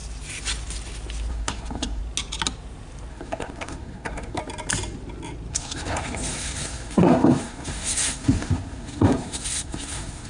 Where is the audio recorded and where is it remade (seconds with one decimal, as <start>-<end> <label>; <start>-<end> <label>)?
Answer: 0.0-1.3 recorded; 1.3-2.0 remade; 2.0-3.1 recorded; 3.1-4.4 remade; 4.4-5.5 recorded; 5.5-10.3 remade